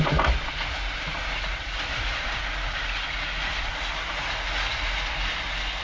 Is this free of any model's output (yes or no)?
yes